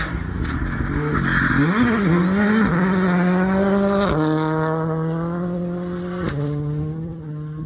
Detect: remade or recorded recorded